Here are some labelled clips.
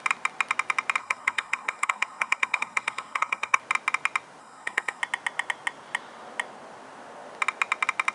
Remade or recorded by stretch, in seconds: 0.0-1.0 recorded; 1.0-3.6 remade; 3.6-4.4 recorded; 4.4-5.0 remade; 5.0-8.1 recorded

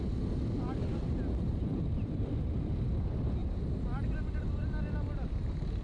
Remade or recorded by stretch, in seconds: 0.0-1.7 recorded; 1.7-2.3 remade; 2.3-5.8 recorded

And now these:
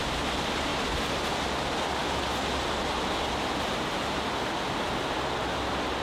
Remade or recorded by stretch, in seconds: 0.0-6.0 recorded